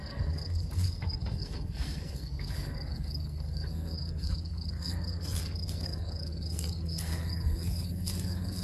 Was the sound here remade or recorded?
remade